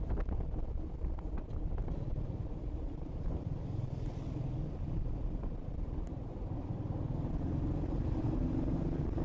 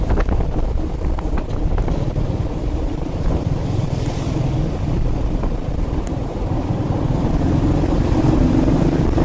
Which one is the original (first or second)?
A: first